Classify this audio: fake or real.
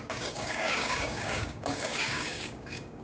fake